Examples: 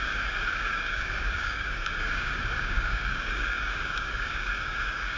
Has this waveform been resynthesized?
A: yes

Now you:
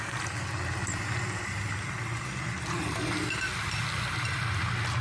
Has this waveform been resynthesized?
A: no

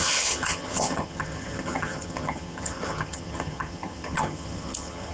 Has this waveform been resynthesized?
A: yes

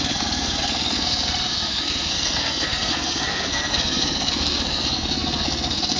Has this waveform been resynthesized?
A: yes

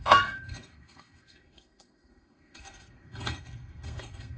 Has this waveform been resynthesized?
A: yes